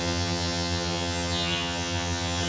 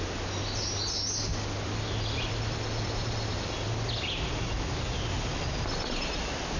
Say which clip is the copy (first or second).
first